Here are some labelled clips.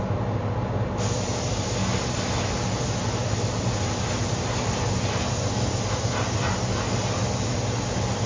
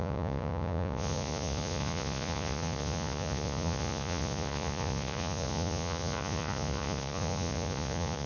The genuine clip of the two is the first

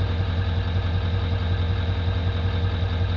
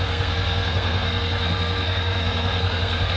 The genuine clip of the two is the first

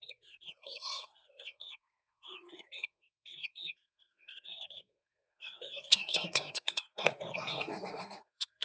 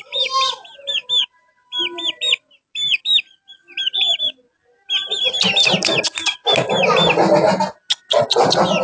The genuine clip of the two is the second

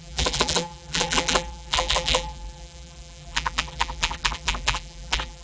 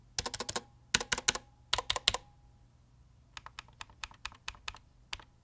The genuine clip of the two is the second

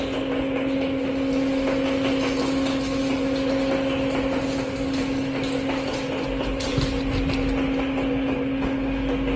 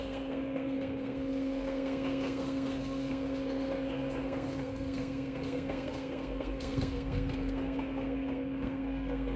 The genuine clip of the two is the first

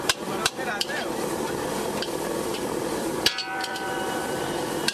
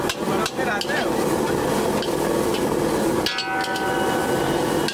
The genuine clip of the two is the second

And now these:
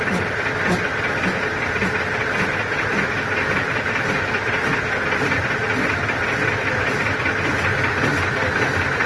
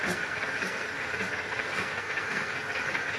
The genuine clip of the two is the first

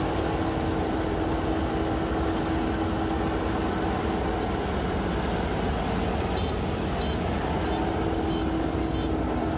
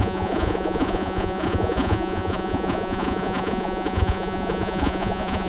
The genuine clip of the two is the first